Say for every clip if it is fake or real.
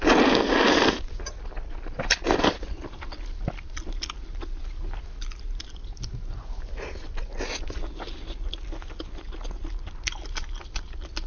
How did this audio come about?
real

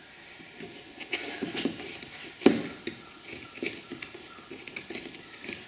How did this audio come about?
real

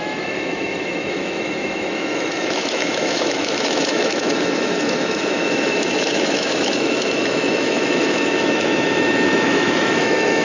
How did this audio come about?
fake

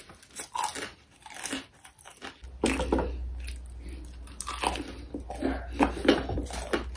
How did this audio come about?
real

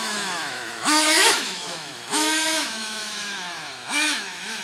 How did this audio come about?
fake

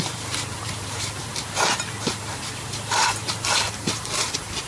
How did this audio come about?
fake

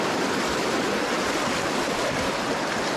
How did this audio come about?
fake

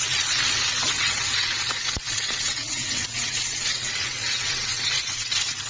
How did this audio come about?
fake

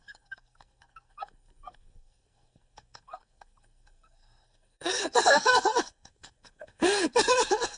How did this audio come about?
fake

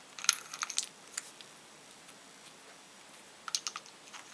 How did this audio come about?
real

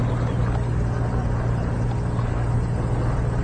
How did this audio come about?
real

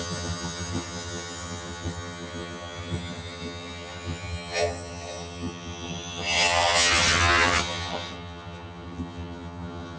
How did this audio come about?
fake